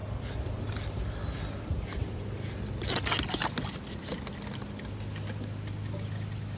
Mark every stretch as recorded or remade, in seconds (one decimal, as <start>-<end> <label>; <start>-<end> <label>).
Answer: 0.0-6.6 recorded